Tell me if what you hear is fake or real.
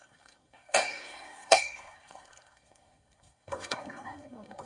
fake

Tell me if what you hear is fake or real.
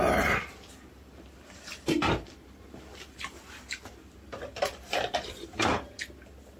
fake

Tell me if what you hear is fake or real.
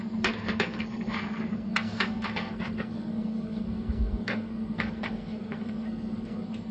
fake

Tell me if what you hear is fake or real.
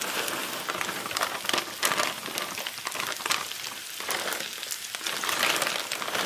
real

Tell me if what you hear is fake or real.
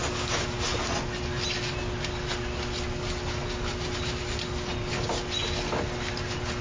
real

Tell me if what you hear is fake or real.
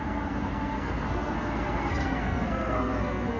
fake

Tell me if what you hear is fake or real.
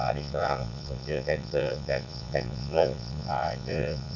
fake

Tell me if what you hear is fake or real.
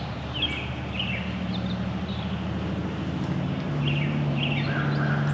real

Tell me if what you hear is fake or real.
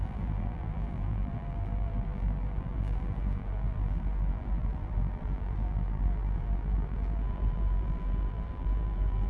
fake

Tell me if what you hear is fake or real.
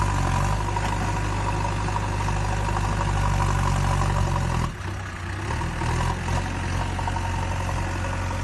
real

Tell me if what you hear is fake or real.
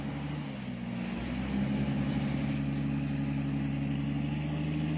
real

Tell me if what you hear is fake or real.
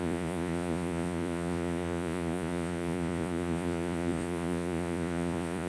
fake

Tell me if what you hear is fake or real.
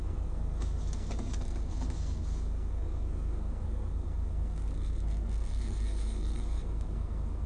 fake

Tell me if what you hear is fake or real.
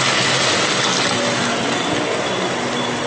real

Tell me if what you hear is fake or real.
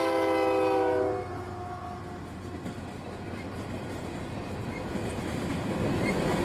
real